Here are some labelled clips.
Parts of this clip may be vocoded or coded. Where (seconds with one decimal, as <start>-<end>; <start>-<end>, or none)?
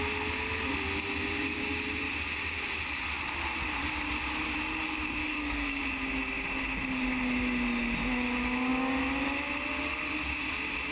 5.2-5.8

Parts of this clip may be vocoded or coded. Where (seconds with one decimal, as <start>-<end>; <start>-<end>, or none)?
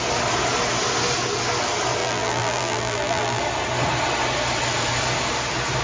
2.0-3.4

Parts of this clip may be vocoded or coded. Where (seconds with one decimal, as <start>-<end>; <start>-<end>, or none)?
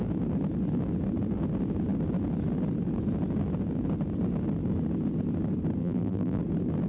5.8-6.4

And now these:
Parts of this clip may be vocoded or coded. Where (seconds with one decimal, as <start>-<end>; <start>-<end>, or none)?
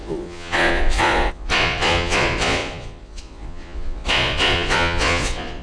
0.0-5.6